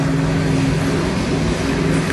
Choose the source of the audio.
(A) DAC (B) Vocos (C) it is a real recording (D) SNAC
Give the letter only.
C